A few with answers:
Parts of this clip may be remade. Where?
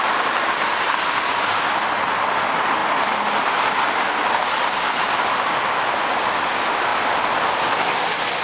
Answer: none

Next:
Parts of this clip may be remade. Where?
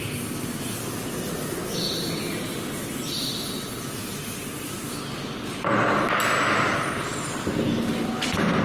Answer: none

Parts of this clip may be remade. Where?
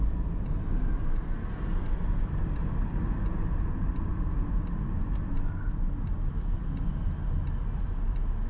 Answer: none